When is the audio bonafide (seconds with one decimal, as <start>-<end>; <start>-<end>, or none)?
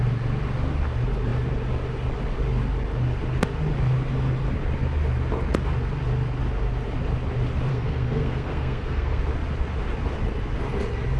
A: 0.0-7.7; 9.2-11.2